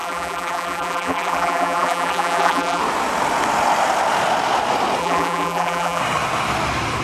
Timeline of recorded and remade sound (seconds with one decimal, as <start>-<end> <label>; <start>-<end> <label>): 0.0-2.8 remade; 2.8-5.0 recorded; 5.0-6.0 remade; 6.0-7.0 recorded